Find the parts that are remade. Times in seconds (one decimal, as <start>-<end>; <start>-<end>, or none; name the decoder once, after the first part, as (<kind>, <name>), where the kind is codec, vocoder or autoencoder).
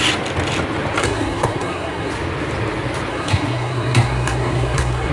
1.0-2.1 (codec, SNAC); 3.1-5.1